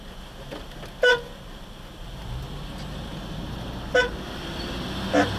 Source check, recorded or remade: recorded